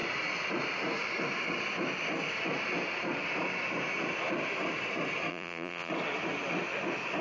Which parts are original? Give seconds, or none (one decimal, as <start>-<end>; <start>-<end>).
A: 0.0-5.3; 5.9-7.2